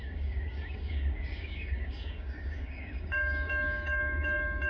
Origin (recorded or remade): remade